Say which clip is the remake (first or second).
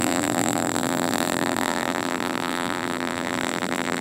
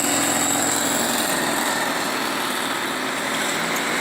first